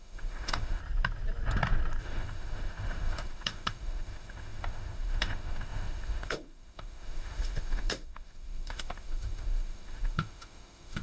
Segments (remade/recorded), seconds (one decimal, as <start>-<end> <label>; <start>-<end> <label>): 0.0-0.8 remade; 0.8-2.0 recorded; 2.0-11.0 remade